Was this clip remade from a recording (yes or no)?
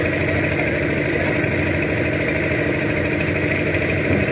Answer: no